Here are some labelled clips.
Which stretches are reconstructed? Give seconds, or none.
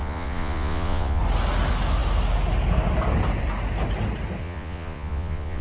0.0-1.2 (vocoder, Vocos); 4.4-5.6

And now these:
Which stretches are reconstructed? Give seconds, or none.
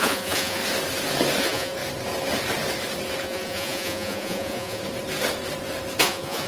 0.0-0.6 (vocoder, Vocos); 1.4-1.8; 3.2-4.8; 6.0-6.5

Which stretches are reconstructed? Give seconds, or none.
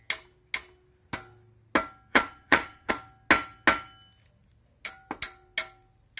2.1-2.9 (vocoder, Vocos)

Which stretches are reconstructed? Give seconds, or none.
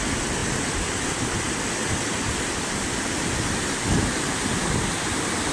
none